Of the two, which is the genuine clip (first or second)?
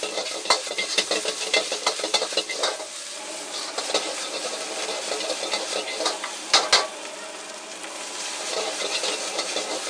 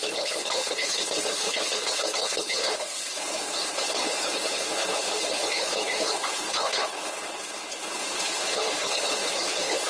first